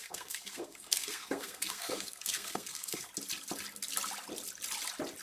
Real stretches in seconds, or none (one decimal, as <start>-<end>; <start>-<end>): 3.1-5.2

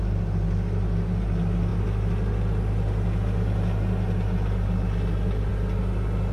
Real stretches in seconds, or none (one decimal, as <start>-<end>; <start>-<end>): 0.0-6.3

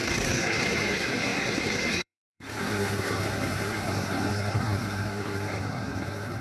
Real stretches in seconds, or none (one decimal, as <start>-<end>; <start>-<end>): none

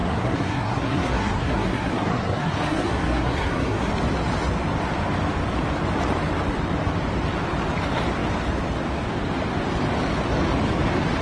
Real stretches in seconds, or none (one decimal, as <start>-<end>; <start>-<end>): 3.9-11.2

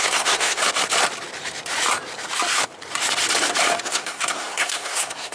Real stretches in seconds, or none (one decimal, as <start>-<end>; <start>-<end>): 0.6-3.8